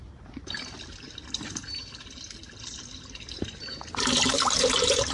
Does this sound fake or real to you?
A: real